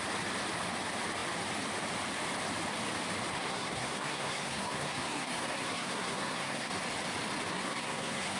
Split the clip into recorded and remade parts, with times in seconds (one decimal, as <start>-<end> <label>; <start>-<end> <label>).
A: 0.0-3.3 recorded; 3.3-6.7 remade; 6.7-7.5 recorded; 7.5-8.4 remade